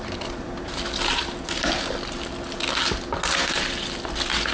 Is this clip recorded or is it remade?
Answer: recorded